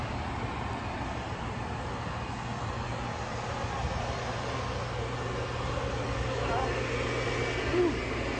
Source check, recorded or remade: recorded